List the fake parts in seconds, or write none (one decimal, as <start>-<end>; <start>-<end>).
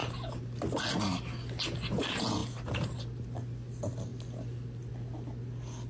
none